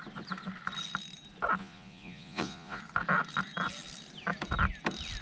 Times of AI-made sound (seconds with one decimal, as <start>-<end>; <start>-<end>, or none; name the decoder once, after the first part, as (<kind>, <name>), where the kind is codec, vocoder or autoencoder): 1.6-2.8 (vocoder, Vocos)